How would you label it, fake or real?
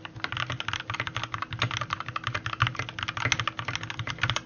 real